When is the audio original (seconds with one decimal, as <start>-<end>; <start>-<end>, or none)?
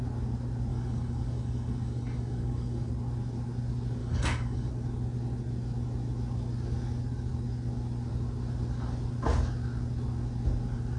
0.0-0.7; 2.9-4.0; 4.7-11.0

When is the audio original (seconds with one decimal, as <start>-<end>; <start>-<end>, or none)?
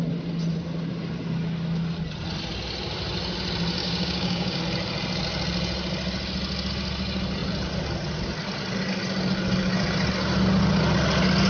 0.0-3.8; 4.6-11.5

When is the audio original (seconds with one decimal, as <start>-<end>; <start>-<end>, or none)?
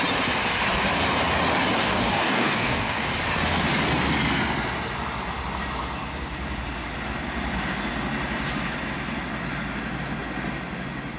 0.0-1.8; 3.1-11.2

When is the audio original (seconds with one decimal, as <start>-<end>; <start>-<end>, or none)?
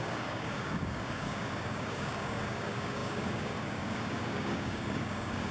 none